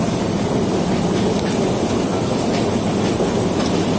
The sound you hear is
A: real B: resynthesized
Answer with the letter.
A